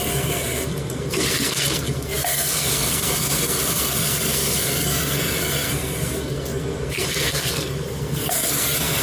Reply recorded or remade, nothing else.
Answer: remade